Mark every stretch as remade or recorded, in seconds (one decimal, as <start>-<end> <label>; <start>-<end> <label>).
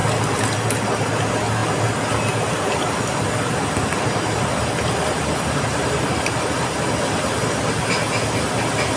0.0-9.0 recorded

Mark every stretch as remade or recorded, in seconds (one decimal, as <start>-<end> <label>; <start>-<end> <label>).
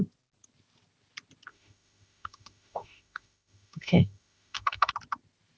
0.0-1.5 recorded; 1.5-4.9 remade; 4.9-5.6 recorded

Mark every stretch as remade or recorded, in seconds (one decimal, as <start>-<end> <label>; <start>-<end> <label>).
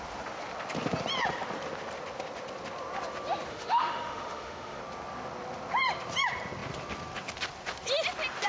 0.0-3.5 recorded; 3.5-4.8 remade; 4.8-8.5 recorded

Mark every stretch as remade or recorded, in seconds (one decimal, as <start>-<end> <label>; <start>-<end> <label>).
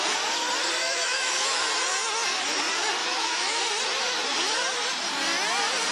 0.0-0.8 recorded; 0.8-1.7 remade; 1.7-3.0 recorded; 3.0-3.6 remade; 3.6-5.9 recorded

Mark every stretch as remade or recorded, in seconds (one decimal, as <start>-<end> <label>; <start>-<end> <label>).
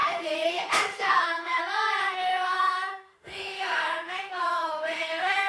0.0-1.6 remade; 1.6-2.0 recorded; 2.0-5.5 remade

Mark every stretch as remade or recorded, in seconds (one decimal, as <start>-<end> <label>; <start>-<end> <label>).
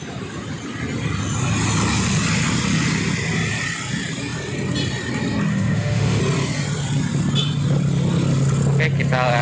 0.0-5.5 recorded; 5.5-6.2 remade; 6.2-9.4 recorded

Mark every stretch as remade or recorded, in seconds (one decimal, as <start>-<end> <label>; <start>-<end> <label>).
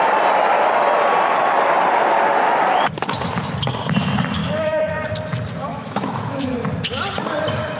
0.0-4.4 recorded; 4.4-4.9 remade; 4.9-5.7 recorded; 5.7-6.5 remade; 6.5-7.8 recorded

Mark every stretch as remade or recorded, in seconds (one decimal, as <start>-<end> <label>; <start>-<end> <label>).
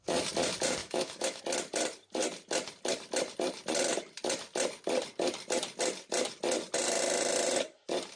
0.0-0.8 recorded; 0.8-1.4 remade; 1.4-8.2 recorded